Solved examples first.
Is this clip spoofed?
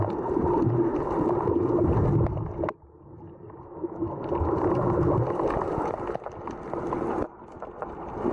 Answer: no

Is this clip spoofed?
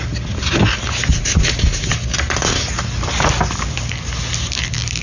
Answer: no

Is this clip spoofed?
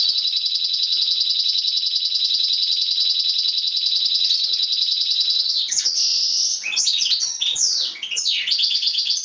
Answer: yes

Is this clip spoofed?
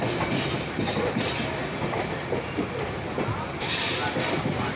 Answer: yes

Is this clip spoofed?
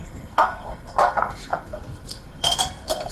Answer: yes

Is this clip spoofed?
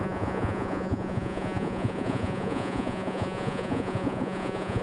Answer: yes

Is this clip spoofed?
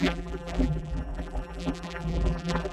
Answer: yes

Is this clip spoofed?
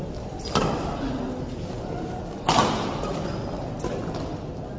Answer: no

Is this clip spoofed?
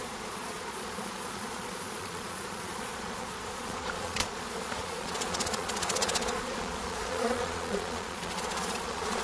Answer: yes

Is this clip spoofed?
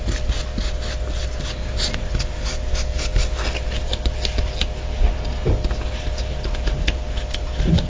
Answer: no